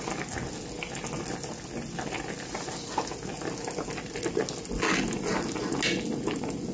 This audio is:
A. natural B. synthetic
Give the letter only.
A